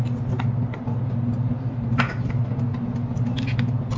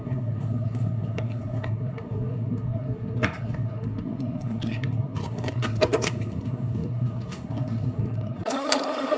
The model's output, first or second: second